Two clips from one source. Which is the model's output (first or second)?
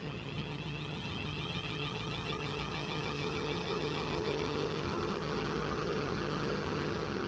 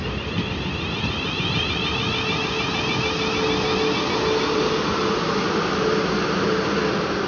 first